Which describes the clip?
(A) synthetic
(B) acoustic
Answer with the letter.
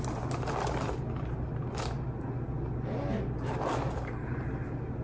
B